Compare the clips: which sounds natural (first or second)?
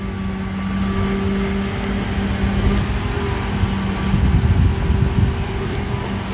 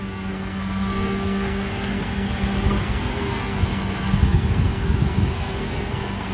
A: first